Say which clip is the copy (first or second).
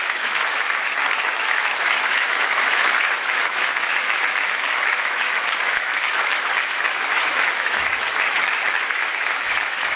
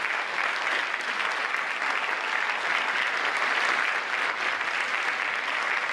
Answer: first